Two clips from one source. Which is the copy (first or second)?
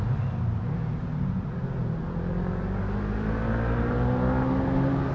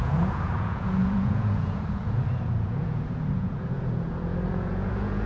second